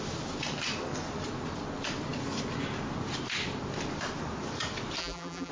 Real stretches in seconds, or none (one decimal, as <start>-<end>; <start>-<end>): 0.0-5.0